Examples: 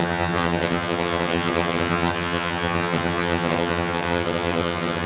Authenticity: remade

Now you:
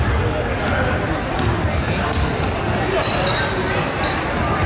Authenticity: recorded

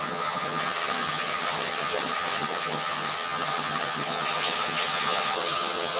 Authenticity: remade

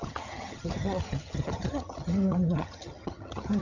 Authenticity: remade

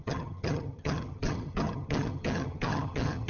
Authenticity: remade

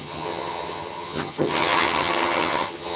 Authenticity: remade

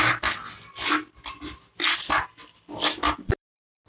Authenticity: recorded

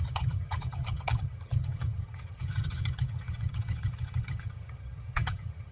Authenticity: remade